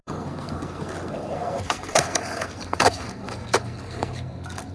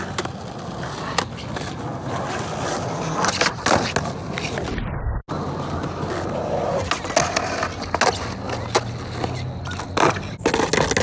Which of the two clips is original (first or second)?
second